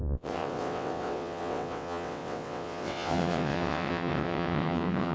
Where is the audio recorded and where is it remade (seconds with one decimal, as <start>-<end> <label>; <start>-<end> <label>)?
0.0-5.1 remade